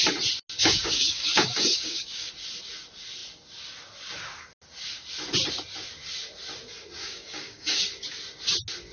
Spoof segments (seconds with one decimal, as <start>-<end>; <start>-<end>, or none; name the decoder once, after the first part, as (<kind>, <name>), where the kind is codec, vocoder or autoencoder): 0.6-2.3 (codec, DAC); 7.0-7.8